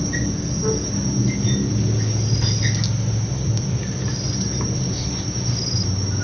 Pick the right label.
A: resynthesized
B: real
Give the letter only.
B